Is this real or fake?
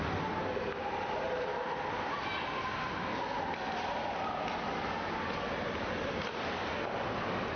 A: real